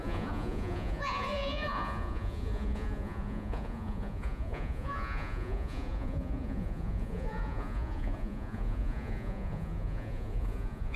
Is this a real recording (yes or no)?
no